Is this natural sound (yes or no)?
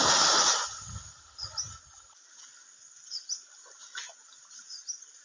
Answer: yes